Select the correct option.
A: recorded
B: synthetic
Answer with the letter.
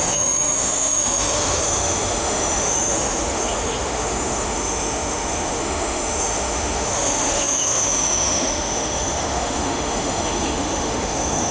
B